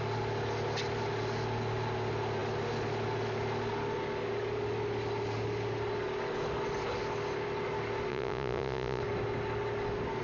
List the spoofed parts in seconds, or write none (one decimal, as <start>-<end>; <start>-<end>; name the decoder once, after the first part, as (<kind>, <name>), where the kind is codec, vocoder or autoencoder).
8.1-9.0 (vocoder, Vocos)